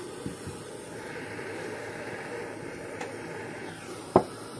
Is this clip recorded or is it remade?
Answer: recorded